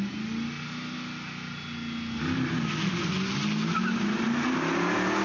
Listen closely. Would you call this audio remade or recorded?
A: recorded